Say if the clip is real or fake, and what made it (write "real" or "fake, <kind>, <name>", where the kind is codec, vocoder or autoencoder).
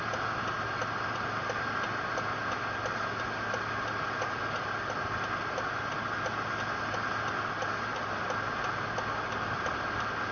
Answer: real